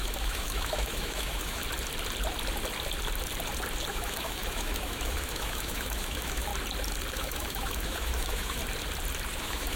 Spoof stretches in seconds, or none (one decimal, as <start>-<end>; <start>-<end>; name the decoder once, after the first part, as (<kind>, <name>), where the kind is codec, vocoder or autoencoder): 0.0-1.6 (autoencoder, DAC-VAE); 3.9-6.5; 7.1-8.6; 9.4-9.8